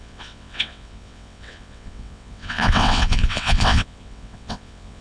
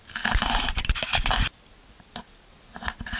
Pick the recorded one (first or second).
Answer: second